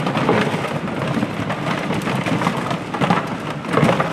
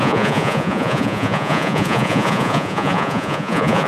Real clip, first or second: first